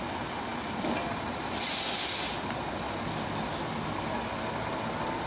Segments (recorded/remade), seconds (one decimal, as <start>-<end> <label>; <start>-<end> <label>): 0.0-5.3 recorded